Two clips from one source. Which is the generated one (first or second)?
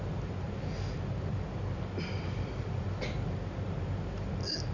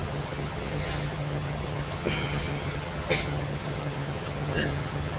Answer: second